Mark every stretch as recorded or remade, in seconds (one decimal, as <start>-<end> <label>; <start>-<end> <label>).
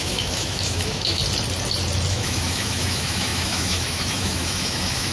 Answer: 0.0-1.2 remade; 1.2-2.1 recorded; 2.1-5.1 remade